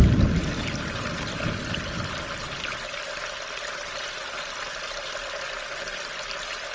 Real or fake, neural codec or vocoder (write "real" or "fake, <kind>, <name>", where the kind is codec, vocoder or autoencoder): real